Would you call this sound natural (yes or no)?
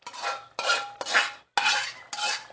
yes